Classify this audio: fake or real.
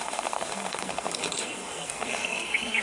fake